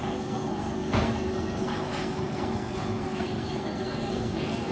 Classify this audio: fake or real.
fake